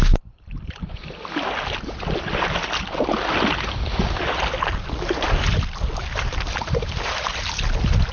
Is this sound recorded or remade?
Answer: recorded